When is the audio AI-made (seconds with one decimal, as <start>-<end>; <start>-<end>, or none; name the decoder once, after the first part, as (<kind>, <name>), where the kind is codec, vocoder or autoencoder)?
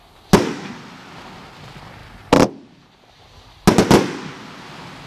none